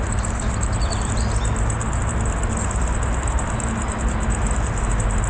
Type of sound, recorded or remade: recorded